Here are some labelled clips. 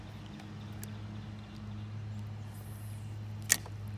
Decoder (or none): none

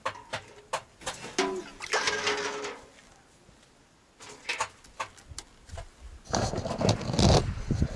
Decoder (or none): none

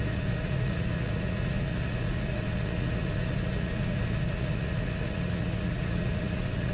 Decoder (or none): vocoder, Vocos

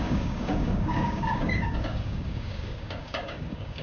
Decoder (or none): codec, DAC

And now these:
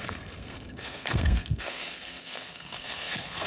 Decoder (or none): codec, SNAC